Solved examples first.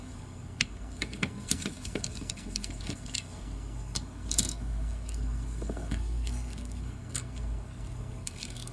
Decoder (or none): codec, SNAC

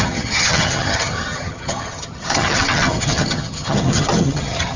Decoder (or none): vocoder, HiFi-GAN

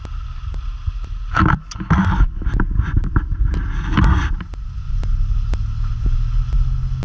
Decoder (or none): none